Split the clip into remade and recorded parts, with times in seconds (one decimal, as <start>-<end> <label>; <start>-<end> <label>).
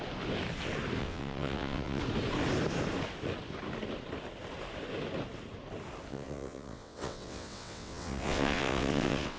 0.0-1.0 recorded; 1.0-2.0 remade; 2.0-6.1 recorded; 6.1-9.4 remade